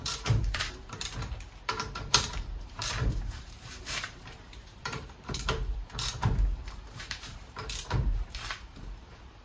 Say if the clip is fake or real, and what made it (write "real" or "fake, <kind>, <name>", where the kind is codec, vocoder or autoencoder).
fake, vocoder, BigVGAN v2